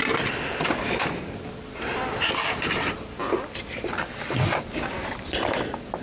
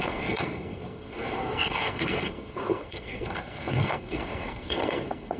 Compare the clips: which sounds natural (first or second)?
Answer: first